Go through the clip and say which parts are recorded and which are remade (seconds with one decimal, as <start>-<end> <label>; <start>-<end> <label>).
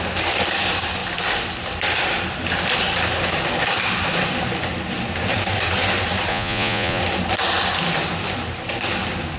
0.0-6.3 recorded; 6.3-7.0 remade; 7.0-9.4 recorded